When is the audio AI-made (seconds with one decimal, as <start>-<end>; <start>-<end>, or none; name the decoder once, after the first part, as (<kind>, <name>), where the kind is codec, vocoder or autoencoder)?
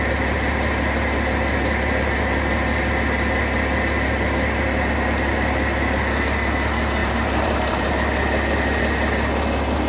7.0-7.9 (vocoder, BigVGAN v2)